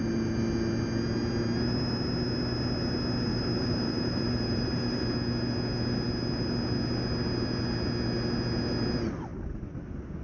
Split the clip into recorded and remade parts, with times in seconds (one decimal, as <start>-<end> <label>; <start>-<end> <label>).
0.0-3.3 recorded; 3.3-5.0 remade; 5.0-10.2 recorded